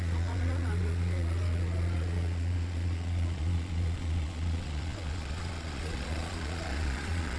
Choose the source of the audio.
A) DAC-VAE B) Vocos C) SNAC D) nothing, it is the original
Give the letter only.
B